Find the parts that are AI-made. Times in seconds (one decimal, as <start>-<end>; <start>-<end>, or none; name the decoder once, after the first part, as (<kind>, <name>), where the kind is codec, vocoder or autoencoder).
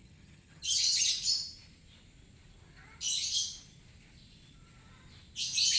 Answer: 0.0-1.1 (vocoder, HiFi-GAN)